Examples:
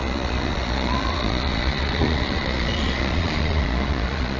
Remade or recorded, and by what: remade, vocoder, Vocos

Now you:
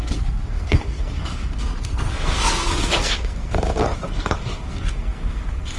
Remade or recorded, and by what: remade, codec, SNAC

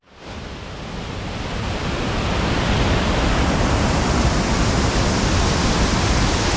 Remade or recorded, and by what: recorded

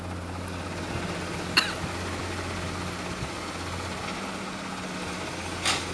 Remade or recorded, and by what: recorded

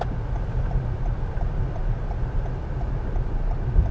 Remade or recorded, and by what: recorded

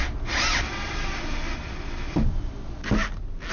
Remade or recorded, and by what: recorded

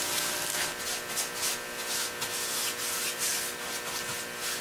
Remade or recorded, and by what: recorded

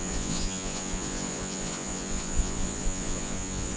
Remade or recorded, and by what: remade, vocoder, Vocos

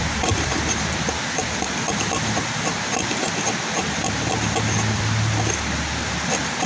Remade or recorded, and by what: remade, vocoder, BigVGAN v2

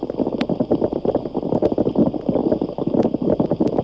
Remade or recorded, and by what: recorded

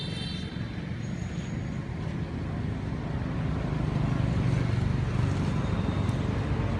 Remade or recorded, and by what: recorded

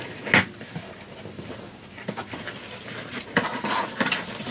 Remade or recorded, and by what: recorded